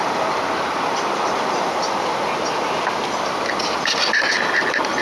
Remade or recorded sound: recorded